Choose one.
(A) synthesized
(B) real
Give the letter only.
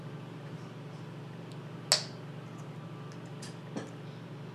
B